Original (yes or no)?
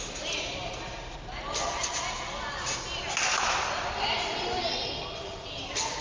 yes